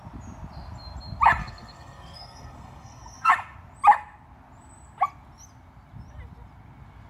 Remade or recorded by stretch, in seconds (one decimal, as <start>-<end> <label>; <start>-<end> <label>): 0.0-1.4 recorded; 1.4-3.3 remade; 3.3-7.1 recorded